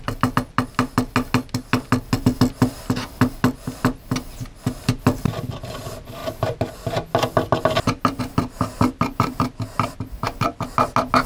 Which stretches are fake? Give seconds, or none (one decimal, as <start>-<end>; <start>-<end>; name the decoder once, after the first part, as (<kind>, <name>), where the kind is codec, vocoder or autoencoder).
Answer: none